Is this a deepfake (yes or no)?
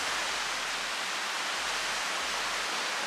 no